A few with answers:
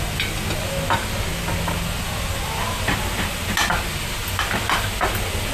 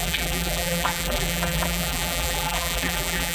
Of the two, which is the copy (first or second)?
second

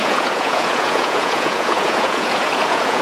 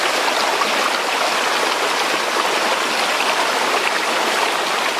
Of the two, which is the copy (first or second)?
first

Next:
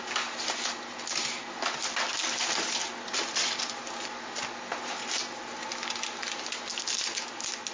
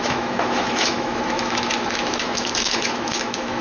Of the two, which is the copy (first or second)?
second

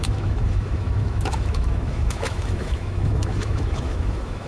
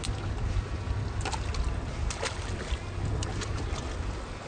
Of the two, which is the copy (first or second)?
first